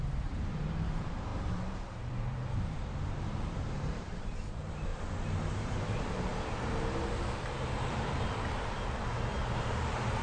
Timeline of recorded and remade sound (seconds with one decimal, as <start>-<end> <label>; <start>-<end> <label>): 0.0-4.9 remade; 4.9-5.5 recorded; 5.5-6.3 remade; 6.3-7.0 recorded; 7.0-10.2 remade